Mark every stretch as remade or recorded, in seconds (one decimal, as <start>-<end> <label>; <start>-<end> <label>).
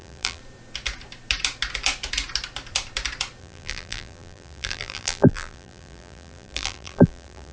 0.0-0.4 remade; 0.4-3.4 recorded; 3.4-7.5 remade